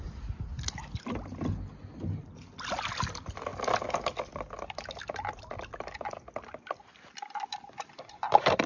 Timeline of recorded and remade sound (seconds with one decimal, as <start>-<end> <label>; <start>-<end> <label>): 0.0-8.7 recorded